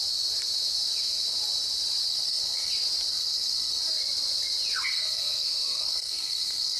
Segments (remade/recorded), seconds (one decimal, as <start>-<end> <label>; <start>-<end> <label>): 0.0-2.1 recorded; 2.1-2.7 remade; 2.7-3.1 recorded; 3.1-3.8 remade; 3.8-4.9 recorded; 4.9-6.8 remade